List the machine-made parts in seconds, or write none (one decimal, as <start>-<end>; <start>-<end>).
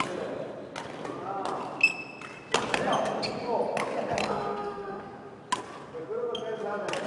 4.2-5.0